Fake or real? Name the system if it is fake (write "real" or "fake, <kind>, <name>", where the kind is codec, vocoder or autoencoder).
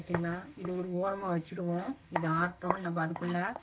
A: fake, codec, SNAC